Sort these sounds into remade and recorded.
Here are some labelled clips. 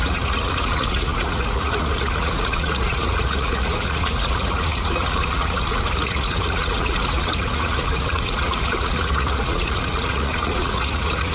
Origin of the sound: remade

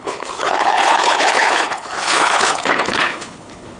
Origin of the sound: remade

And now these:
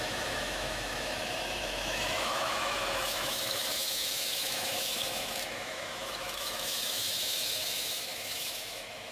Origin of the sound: remade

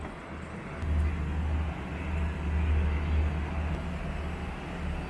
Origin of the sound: recorded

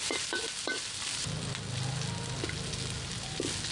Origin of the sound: recorded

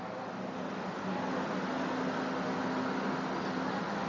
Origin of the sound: recorded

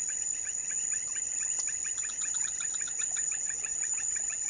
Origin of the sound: recorded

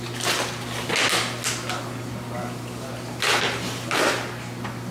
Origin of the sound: recorded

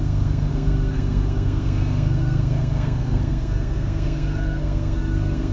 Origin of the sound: remade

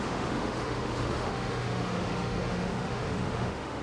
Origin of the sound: remade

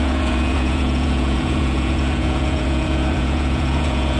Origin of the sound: remade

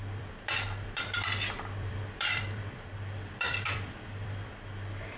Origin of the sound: remade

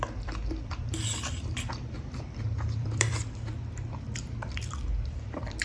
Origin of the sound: remade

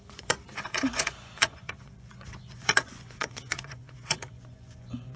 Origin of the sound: remade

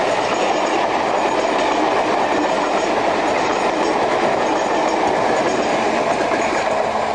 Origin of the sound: recorded